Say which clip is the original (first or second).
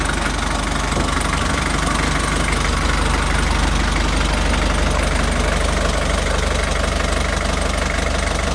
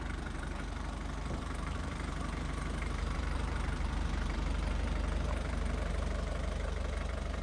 first